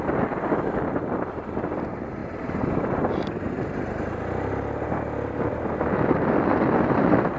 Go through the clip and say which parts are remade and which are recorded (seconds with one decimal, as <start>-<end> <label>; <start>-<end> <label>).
0.0-7.4 recorded